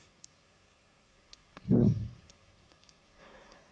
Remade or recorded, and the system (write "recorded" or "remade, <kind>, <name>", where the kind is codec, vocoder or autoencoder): remade, codec, SNAC